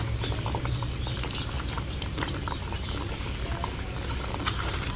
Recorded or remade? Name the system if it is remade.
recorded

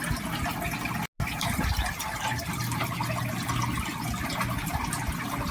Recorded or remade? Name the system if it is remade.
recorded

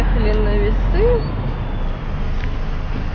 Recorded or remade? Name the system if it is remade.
recorded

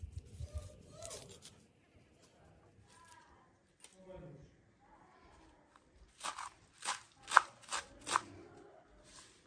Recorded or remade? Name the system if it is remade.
recorded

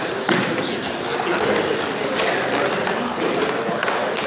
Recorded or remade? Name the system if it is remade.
recorded